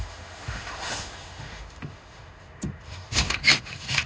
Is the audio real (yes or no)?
no